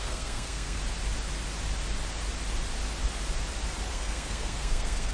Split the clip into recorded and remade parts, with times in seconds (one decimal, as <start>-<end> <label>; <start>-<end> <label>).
0.0-0.8 remade; 0.8-3.9 recorded; 3.9-5.1 remade